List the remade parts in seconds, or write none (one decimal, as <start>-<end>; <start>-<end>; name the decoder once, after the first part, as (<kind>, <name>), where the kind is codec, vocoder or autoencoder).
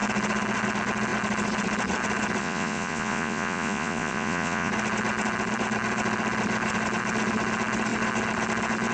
2.4-4.7 (vocoder, Vocos)